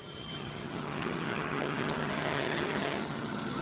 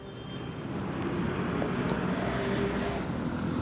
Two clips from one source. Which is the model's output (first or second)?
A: first